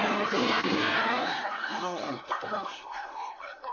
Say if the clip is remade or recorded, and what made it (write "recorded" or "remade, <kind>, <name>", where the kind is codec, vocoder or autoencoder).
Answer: remade, codec, SNAC